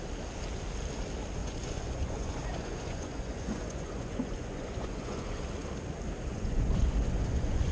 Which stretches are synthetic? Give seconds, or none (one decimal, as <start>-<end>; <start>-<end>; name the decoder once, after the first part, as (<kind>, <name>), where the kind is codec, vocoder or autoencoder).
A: 1.4-5.5 (vocoder, Vocos); 6.3-7.7